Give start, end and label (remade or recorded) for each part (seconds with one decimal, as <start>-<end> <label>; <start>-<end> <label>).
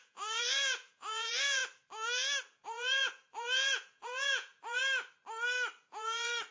0.0-1.6 remade; 1.6-2.4 recorded; 2.4-4.8 remade; 4.8-5.9 recorded; 5.9-6.5 remade